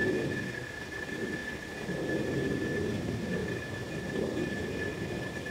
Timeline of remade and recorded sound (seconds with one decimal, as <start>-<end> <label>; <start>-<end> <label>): 0.0-0.7 recorded; 0.7-1.4 remade; 1.4-3.0 recorded; 3.0-3.4 remade; 3.4-4.9 recorded; 4.9-5.5 remade